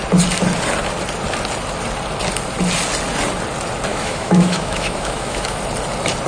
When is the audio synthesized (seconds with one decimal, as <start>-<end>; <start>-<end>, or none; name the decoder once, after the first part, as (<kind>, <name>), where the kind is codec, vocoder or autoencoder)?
3.9-5.6 (autoencoder, DAC-VAE)